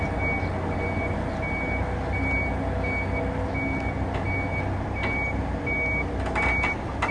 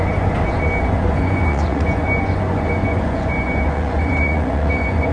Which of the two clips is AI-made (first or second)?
second